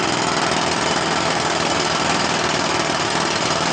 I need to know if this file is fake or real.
real